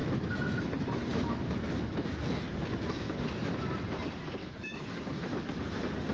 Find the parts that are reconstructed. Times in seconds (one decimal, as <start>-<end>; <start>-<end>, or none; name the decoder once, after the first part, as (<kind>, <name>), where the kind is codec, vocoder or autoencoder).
0.0-0.6 (autoencoder, DAC-VAE); 1.1-3.4; 4.4-5.5